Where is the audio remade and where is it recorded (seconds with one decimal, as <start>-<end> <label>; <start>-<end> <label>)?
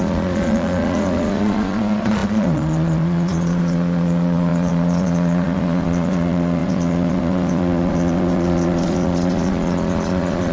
0.0-10.5 remade